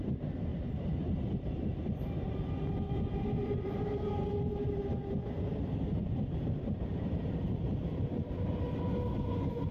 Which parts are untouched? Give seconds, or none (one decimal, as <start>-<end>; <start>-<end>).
0.0-0.5; 2.1-3.4; 8.1-9.7